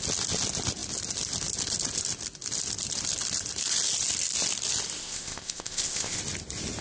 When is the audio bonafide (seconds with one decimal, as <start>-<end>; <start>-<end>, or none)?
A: 0.0-5.0; 6.2-6.8